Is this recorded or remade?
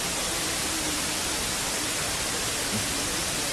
recorded